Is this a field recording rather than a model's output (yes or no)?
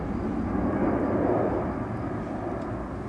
yes